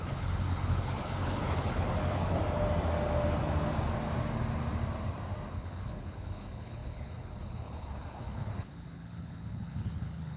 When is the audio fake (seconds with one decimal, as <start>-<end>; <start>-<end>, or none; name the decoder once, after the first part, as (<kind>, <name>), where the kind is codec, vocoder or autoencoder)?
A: 0.0-2.4 (codec, HILCodec); 5.5-10.4